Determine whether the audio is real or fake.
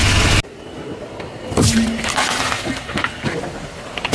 real